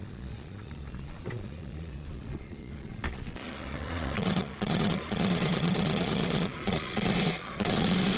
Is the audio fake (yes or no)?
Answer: yes